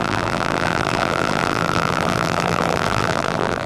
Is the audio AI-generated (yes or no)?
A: yes